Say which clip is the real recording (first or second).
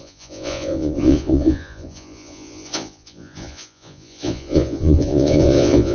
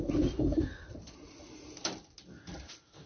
second